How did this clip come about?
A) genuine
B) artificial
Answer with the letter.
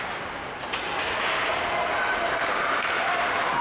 A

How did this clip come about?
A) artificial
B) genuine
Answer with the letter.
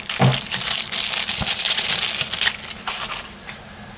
B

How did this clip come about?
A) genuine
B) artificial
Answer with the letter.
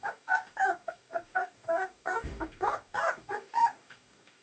B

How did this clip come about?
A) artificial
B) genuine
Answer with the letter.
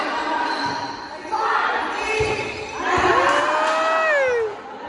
B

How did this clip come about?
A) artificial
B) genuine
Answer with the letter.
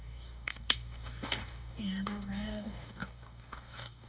A